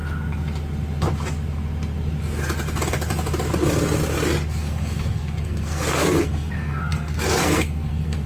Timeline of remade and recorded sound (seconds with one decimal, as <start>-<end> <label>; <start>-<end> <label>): 0.0-4.5 recorded; 4.5-8.3 remade